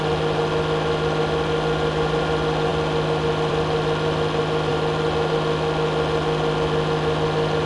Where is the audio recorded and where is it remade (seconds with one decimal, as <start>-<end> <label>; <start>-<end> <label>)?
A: 0.0-7.7 recorded